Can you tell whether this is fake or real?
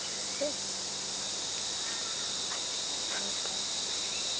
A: real